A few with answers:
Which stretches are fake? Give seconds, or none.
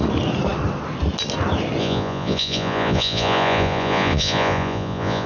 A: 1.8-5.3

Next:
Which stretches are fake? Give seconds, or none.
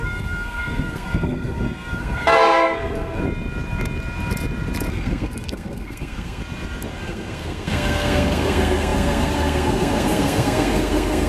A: 0.0-3.2; 4.9-6.4; 6.9-11.3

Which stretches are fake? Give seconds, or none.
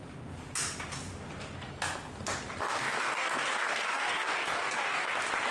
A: 2.6-5.1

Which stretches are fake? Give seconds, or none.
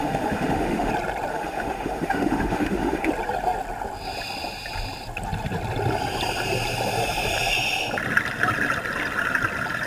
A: 0.0-0.9; 1.3-3.1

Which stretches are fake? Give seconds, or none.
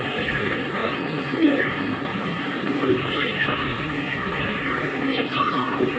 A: 0.0-6.0